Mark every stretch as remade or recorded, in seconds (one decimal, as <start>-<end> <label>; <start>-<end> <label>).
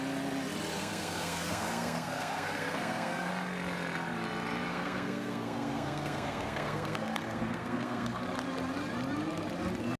0.0-0.8 recorded; 0.8-3.3 remade; 3.3-4.7 recorded; 4.7-8.2 remade; 8.2-10.0 recorded